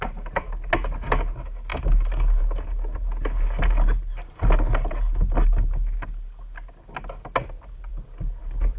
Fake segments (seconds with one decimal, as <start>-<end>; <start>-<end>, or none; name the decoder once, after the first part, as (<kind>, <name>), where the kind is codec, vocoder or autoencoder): none